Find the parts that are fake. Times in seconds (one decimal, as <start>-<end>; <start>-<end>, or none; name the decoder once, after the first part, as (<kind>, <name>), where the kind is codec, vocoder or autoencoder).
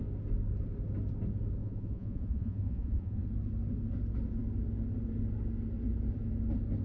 1.6-3.2 (vocoder, Vocos)